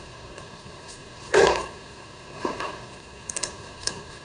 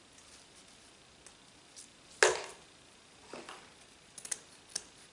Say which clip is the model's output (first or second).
first